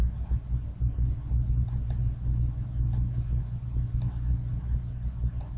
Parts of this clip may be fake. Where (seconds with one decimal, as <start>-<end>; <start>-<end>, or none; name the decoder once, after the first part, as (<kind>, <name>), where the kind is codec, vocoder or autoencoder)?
none